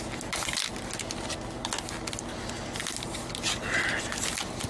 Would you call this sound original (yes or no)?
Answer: yes